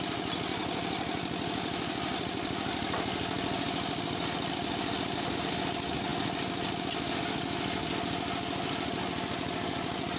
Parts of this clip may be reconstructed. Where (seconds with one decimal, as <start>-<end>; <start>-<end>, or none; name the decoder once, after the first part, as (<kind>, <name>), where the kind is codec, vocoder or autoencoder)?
none